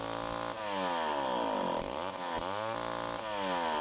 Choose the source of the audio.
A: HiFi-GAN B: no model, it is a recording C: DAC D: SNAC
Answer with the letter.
B